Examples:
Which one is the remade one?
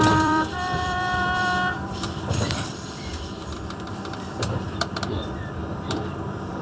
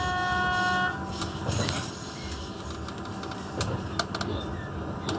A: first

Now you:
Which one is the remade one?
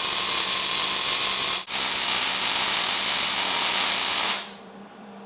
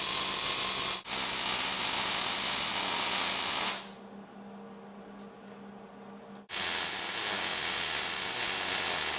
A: first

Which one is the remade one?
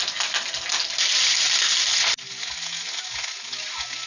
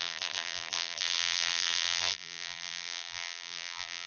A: second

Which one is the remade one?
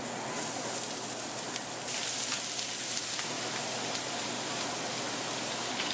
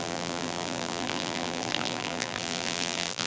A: second